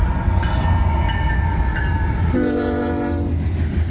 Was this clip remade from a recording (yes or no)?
no